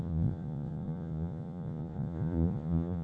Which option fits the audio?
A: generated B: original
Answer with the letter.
A